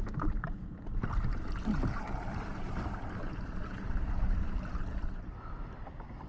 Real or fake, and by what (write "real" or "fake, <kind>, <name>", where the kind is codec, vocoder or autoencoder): real